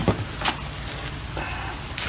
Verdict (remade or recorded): recorded